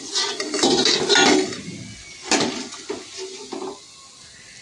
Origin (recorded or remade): recorded